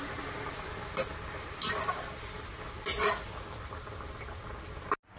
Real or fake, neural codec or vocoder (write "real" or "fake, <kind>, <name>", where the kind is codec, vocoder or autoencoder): real